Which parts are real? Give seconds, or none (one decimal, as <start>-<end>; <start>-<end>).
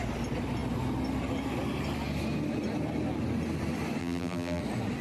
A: 0.0-4.0; 4.6-5.0